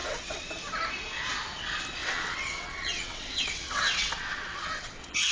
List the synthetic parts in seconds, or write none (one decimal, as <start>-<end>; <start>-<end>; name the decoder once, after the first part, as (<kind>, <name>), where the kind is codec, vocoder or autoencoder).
0.0-0.5 (vocoder, WaveNeXt); 2.0-5.3